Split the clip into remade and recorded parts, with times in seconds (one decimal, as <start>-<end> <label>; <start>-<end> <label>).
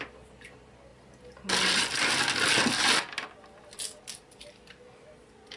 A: 0.0-5.6 recorded